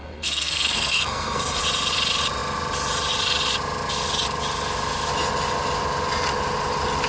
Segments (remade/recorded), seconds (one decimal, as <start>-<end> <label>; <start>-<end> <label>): 0.0-1.6 remade; 1.6-7.1 recorded